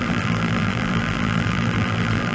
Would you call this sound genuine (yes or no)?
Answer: no